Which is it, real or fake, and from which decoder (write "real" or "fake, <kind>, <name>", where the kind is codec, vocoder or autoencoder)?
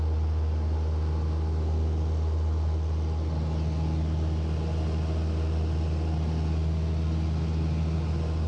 real